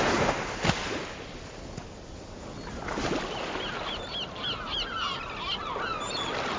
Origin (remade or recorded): recorded